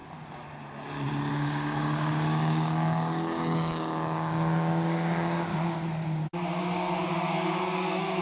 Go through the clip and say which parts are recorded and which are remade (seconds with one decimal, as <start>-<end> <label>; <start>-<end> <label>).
0.0-1.3 recorded; 1.3-5.5 remade; 5.5-6.6 recorded; 6.6-8.2 remade

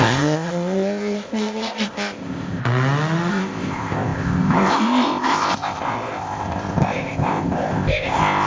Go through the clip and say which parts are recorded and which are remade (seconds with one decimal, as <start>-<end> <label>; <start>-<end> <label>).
0.0-2.6 remade; 2.6-3.3 recorded; 3.3-8.5 remade